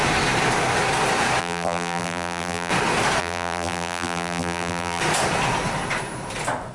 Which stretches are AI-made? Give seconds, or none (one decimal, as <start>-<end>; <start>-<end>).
1.4-2.7; 3.2-5.0